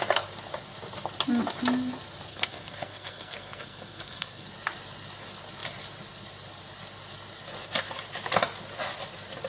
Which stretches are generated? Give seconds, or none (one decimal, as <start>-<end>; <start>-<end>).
2.3-4.5